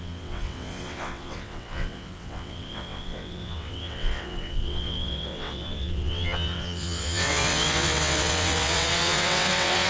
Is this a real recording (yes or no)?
no